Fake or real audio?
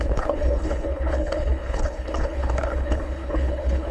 fake